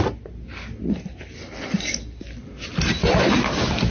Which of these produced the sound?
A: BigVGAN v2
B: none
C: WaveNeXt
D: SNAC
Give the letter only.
B